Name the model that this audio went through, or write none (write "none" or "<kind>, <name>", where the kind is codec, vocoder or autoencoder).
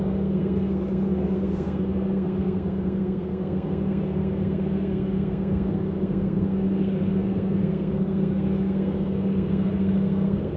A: codec, SNAC